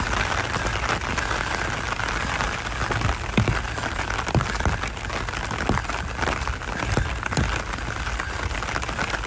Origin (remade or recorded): recorded